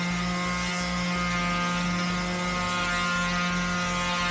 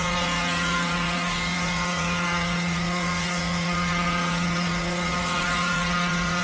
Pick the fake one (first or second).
second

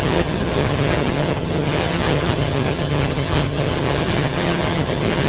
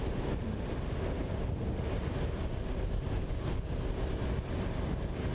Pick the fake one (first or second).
first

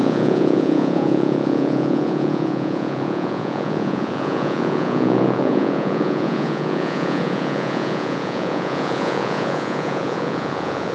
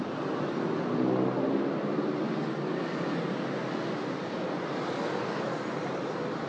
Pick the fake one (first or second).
first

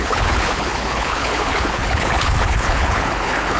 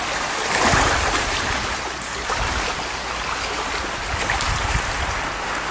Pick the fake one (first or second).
first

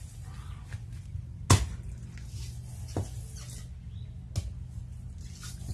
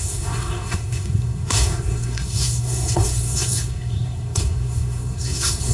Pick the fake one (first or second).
second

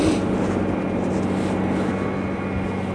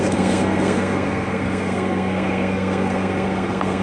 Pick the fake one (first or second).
second